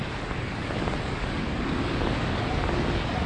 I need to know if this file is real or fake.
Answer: fake